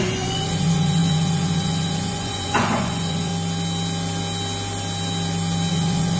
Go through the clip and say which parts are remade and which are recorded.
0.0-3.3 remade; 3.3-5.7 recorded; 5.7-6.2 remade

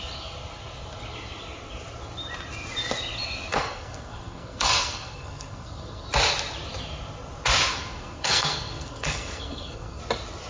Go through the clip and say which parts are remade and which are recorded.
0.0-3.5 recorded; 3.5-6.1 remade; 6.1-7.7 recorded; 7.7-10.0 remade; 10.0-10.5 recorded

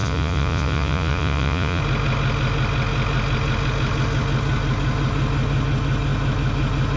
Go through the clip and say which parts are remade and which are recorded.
0.0-1.8 remade; 1.8-7.0 recorded

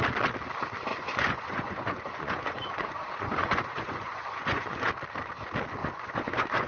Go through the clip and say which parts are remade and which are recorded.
0.0-0.9 recorded; 0.9-4.9 remade; 4.9-5.8 recorded; 5.8-6.7 remade

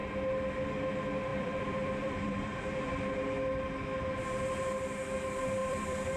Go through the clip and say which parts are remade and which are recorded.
0.0-1.3 recorded; 1.3-3.1 remade; 3.1-5.6 recorded; 5.6-6.2 remade